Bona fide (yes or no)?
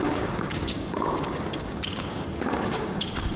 no